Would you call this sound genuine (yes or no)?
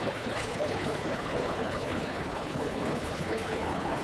no